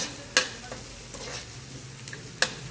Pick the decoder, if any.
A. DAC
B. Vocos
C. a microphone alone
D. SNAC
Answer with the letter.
C